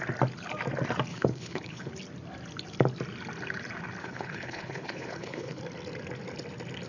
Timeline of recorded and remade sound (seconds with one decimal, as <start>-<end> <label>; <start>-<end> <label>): 0.0-1.1 recorded; 1.1-1.9 remade; 1.9-4.0 recorded; 4.0-5.6 remade; 5.6-6.9 recorded